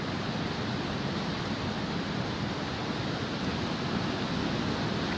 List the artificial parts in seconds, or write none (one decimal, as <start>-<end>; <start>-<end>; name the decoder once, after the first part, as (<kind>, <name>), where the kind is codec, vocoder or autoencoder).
none